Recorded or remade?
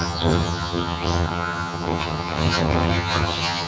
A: remade